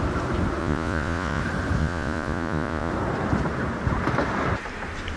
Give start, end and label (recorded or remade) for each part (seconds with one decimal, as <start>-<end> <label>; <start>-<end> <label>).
0.0-0.6 recorded; 0.6-1.4 remade; 1.4-1.8 recorded; 1.8-2.9 remade; 2.9-5.2 recorded